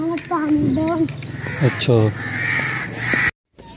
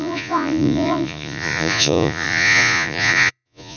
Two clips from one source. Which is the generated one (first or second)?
second